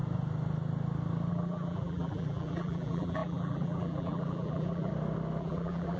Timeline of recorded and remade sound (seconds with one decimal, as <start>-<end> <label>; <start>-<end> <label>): 0.0-1.3 recorded; 1.3-4.9 remade; 4.9-5.4 recorded; 5.4-6.0 remade